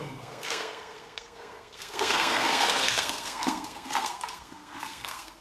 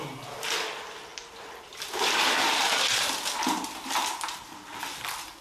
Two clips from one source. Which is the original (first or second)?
second